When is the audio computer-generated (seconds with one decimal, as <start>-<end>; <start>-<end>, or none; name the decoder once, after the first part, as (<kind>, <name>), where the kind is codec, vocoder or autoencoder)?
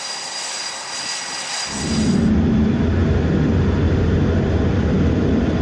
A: none